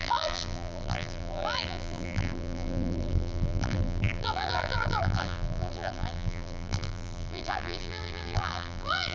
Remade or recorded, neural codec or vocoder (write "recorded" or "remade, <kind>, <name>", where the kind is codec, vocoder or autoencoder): remade, vocoder, BigVGAN v2